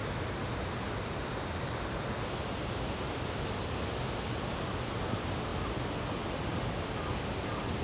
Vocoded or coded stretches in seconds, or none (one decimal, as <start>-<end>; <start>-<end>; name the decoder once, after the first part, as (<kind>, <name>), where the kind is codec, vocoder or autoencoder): 0.0-3.1 (vocoder, BigVGAN v2)